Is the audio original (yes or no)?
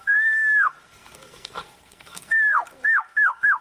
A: no